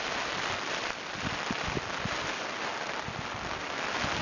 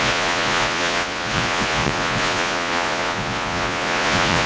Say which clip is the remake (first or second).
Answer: second